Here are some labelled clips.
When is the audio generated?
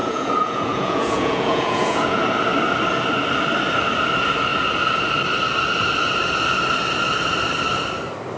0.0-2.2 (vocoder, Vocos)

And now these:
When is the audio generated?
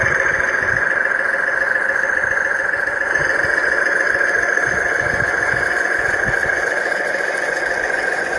0.0-8.4 (vocoder, Vocos)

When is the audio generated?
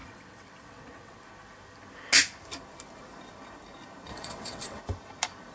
0.0-1.2 (vocoder, WaveNeXt); 4.1-4.8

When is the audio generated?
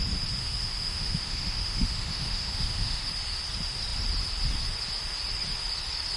0.4-3.1 (autoencoder, DAC-VAE)